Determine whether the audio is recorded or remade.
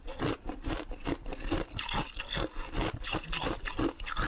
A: recorded